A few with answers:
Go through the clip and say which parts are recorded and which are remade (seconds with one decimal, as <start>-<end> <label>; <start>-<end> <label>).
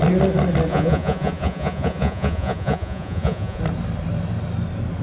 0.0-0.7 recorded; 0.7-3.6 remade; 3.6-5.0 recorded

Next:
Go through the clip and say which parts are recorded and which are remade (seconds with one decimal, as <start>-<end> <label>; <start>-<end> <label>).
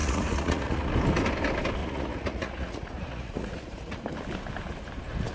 0.0-0.9 remade; 0.9-1.8 recorded; 1.8-4.0 remade; 4.0-5.3 recorded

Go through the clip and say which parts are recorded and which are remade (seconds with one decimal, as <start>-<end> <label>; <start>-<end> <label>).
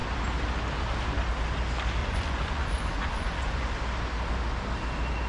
0.0-2.0 recorded; 2.0-3.8 remade; 3.8-5.3 recorded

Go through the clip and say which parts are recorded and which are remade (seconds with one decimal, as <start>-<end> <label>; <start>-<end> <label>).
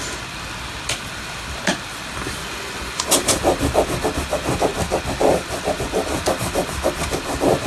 0.0-2.4 recorded; 2.4-3.0 remade; 3.0-7.7 recorded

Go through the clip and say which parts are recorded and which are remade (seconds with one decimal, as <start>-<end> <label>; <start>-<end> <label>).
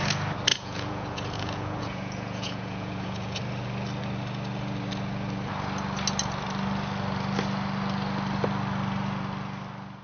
0.0-0.5 recorded; 0.5-3.4 remade; 3.4-10.0 recorded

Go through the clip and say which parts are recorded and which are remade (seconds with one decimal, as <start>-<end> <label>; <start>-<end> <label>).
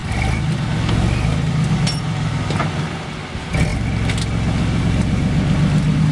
0.0-6.1 recorded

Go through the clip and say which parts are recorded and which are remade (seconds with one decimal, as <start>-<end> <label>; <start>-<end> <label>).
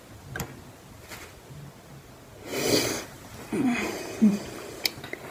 0.0-5.3 recorded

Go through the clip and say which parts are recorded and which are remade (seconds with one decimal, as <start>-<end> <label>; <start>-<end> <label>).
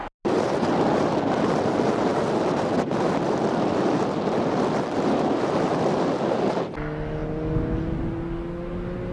0.0-9.1 recorded